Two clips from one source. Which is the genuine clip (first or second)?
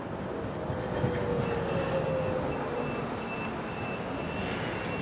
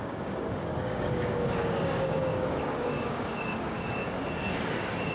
first